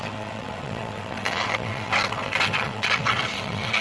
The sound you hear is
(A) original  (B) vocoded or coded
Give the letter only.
B